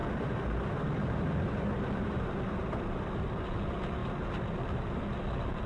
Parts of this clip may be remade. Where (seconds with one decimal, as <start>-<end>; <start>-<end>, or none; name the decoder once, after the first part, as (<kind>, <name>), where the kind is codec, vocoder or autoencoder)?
0.0-3.4 (vocoder, BigVGAN v2)